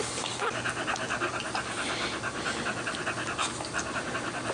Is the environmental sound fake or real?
real